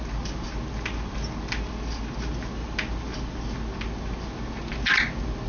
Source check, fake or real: real